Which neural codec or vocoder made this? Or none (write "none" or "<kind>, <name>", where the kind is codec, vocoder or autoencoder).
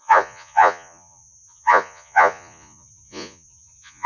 vocoder, Vocos